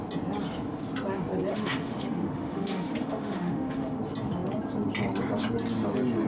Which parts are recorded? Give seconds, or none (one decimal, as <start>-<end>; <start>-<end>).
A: 0.0-1.5; 4.0-6.3